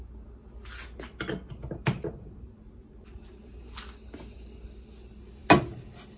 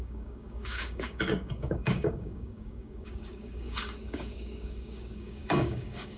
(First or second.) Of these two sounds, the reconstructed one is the second